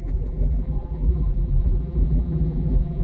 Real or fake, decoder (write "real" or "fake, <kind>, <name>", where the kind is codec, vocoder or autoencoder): fake, vocoder, BigVGAN v2